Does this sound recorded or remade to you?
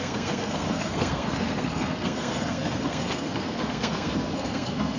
remade